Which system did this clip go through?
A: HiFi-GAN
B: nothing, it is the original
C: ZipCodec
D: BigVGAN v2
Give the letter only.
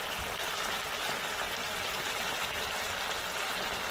B